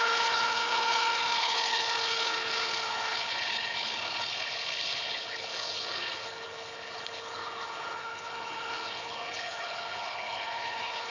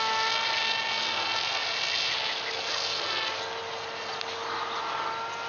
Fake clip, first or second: first